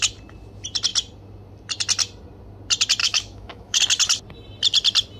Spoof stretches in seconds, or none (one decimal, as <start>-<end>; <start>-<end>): 3.0-3.8